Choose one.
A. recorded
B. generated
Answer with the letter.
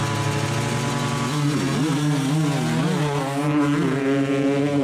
A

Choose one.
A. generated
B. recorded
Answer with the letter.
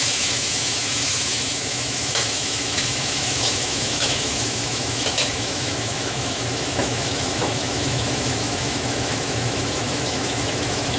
A